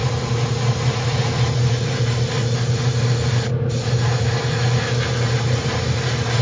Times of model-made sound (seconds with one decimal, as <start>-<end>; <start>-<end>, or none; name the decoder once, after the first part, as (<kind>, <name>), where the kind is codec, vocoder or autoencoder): none